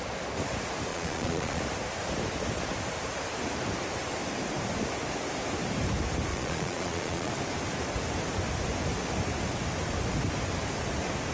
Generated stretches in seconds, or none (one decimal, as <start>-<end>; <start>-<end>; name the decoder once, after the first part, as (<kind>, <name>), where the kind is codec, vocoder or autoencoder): 0.9-1.6 (vocoder, Vocos); 6.3-7.3